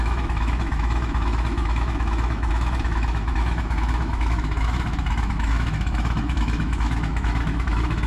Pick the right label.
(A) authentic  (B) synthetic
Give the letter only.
B